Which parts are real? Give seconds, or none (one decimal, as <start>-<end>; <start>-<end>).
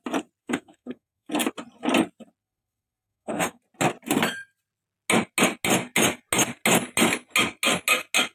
0.0-0.4; 1.3-2.4; 3.6-8.3